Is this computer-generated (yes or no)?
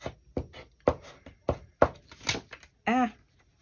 no